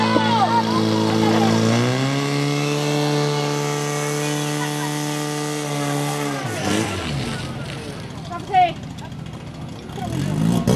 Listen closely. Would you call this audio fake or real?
real